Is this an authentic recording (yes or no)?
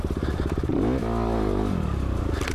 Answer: yes